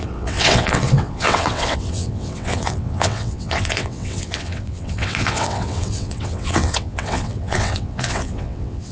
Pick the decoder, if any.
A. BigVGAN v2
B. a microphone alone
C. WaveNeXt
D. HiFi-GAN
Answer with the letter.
C